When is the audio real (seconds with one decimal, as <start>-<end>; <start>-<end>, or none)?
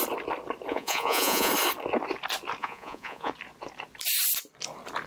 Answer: 0.0-0.7; 1.5-2.6; 3.3-5.1